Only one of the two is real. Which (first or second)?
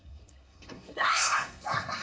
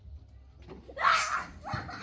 second